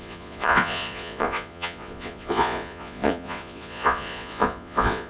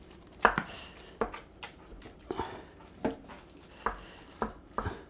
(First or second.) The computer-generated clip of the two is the first